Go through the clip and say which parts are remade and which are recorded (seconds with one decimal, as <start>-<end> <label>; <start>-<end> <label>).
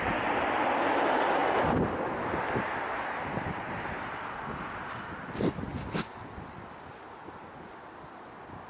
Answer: 0.0-8.7 recorded